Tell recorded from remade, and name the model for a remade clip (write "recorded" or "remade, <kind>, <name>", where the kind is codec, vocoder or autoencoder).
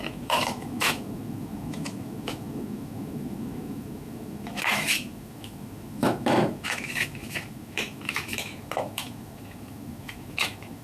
remade, autoencoder, DAC-VAE